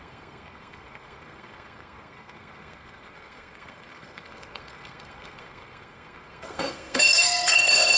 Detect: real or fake fake